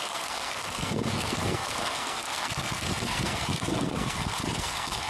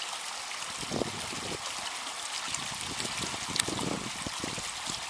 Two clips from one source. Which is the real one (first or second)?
second